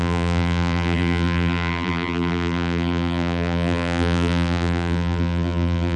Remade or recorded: remade